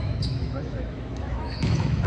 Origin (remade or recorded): remade